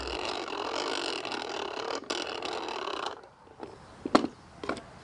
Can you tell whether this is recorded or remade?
recorded